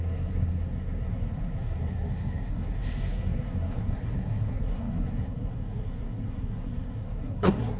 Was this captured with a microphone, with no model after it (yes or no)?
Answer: no